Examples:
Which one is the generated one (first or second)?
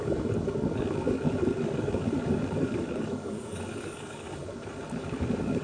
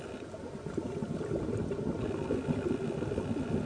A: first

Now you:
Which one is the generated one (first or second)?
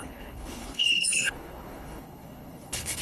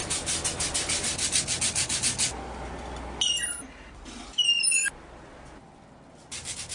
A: first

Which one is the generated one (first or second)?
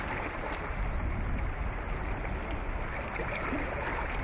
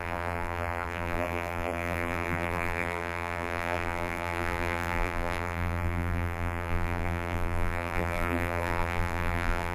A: second